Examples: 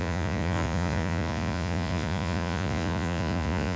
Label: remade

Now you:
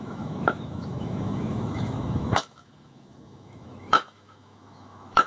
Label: remade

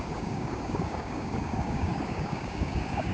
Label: remade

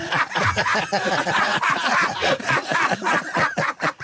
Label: remade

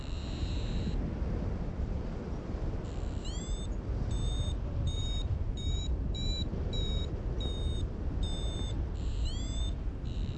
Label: remade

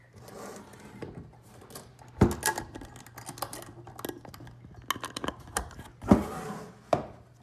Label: recorded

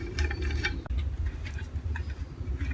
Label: recorded